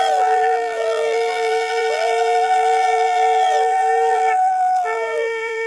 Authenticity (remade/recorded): remade